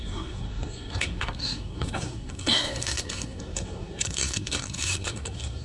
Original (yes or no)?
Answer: no